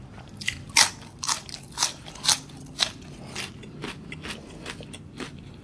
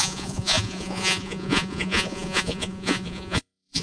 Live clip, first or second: first